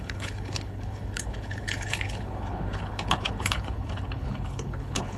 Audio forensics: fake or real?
fake